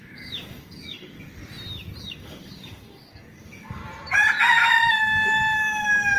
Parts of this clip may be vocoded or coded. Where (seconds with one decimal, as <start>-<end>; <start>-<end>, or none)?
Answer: 0.0-1.4; 2.0-3.8; 4.9-6.2